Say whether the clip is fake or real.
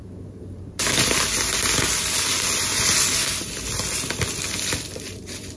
fake